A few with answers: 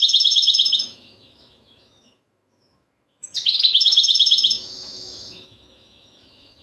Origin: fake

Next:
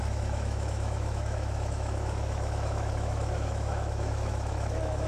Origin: fake